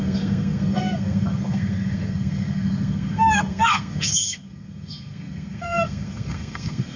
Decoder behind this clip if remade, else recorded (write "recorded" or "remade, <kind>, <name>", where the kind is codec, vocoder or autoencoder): remade, codec, SNAC